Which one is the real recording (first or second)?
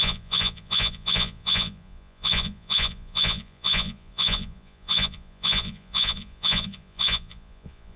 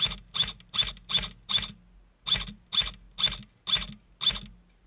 second